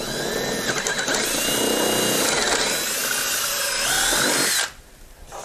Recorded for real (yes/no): yes